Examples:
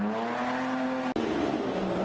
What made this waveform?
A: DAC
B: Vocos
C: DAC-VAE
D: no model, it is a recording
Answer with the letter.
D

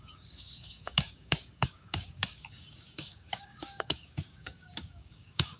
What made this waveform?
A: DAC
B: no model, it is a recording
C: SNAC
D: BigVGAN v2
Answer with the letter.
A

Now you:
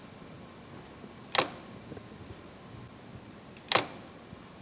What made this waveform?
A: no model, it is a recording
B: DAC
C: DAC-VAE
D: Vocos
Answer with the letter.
A